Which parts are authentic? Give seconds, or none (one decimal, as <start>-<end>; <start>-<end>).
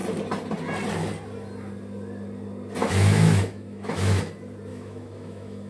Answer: 0.0-2.8; 4.2-4.7